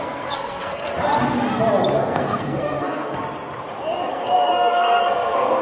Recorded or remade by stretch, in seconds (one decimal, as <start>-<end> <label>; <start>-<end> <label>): 0.0-0.9 remade; 0.9-1.9 recorded; 1.9-3.2 remade; 3.2-4.1 recorded; 4.1-5.6 remade